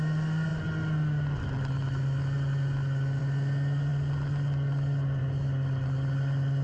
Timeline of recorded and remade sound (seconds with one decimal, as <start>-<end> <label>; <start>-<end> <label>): 0.0-6.6 recorded